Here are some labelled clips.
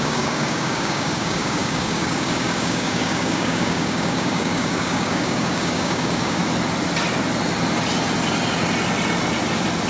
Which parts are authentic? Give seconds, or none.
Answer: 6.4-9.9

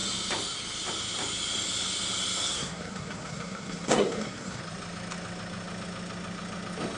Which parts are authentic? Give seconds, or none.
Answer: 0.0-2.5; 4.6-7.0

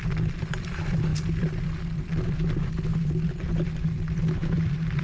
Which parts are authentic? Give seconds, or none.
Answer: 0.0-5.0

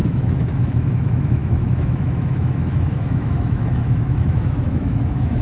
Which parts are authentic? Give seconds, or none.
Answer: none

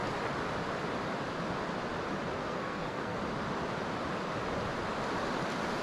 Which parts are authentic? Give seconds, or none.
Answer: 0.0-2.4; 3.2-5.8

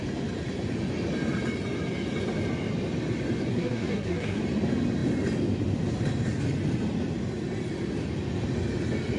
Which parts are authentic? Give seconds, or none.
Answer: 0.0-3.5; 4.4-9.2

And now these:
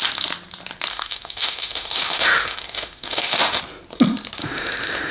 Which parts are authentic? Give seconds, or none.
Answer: 0.0-0.9; 3.6-4.4